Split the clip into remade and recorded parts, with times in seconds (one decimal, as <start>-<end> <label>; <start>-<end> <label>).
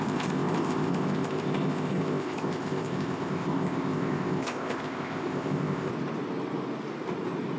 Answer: 0.0-5.9 remade; 5.9-7.6 recorded